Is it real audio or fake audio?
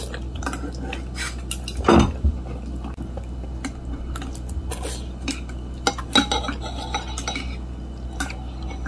real